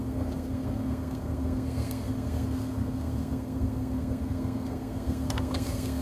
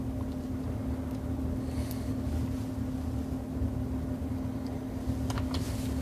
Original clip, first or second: second